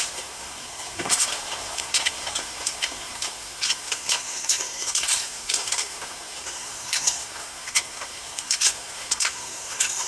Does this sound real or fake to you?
fake